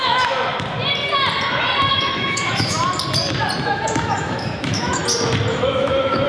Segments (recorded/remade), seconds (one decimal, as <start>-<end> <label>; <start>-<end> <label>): 0.0-0.5 remade; 0.5-1.9 recorded; 1.9-2.8 remade; 2.8-3.6 recorded; 3.6-5.0 remade; 5.0-5.5 recorded; 5.5-6.3 remade